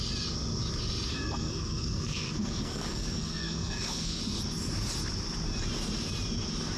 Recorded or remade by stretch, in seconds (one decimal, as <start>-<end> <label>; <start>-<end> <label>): 0.0-1.1 recorded; 1.1-4.2 remade; 4.2-6.8 recorded